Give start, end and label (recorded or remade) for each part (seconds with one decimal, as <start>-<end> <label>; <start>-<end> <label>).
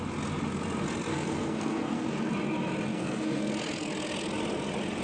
0.0-1.1 recorded; 1.1-2.3 remade; 2.3-2.9 recorded; 2.9-3.5 remade; 3.5-5.0 recorded